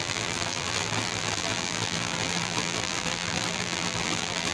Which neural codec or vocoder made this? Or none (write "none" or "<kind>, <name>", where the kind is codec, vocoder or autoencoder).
vocoder, BigVGAN v2